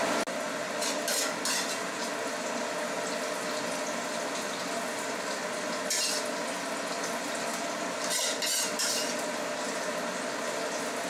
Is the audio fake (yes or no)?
no